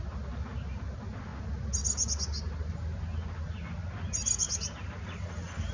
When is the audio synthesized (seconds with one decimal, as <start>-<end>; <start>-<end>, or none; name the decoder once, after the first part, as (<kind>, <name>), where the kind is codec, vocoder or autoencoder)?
none